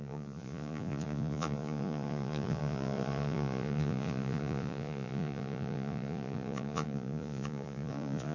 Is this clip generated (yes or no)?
yes